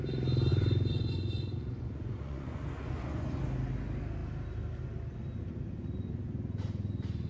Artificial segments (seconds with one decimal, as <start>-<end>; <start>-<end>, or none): 0.5-3.4